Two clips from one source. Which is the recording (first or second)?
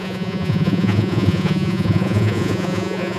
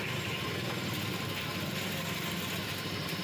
second